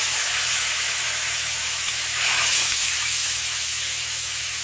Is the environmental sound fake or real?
fake